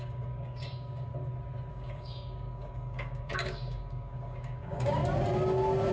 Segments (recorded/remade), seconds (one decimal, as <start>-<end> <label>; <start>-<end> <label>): 0.0-1.1 remade; 1.1-1.7 recorded; 1.7-5.0 remade; 5.0-5.9 recorded